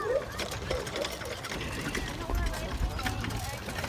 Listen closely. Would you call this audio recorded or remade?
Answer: recorded